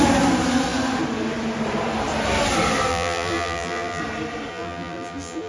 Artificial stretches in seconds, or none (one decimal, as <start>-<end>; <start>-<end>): 2.9-4.0; 4.5-5.5